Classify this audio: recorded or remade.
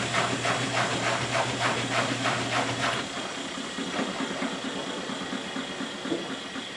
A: recorded